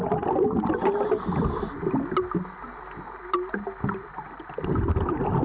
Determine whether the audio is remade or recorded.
recorded